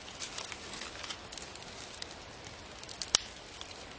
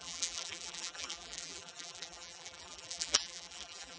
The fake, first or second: second